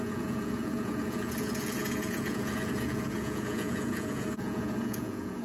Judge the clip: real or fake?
fake